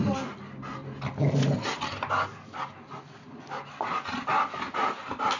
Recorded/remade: recorded